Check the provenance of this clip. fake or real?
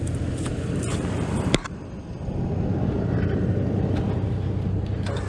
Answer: real